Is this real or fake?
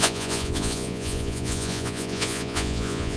fake